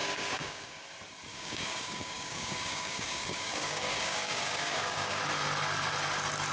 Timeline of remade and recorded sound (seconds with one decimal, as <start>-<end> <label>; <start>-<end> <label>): 0.0-0.8 remade; 0.8-1.3 recorded; 1.3-5.2 remade; 5.2-6.5 recorded